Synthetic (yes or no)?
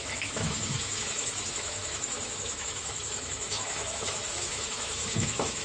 yes